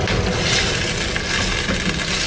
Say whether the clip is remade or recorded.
recorded